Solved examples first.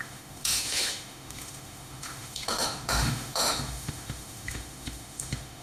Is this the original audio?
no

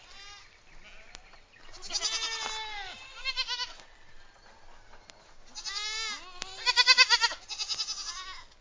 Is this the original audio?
yes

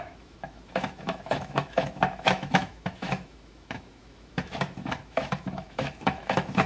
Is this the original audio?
no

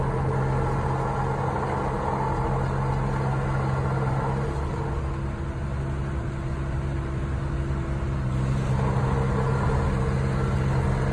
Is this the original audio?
yes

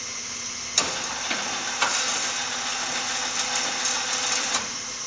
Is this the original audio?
yes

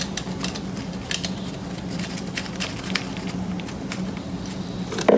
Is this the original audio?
yes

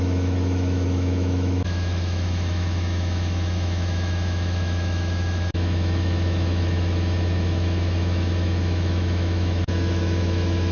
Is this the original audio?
no